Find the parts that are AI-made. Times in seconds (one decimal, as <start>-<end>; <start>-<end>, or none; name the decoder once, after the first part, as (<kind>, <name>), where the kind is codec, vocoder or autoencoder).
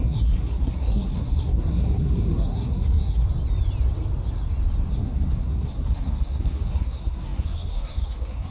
0.0-3.2 (codec, SNAC); 4.9-8.5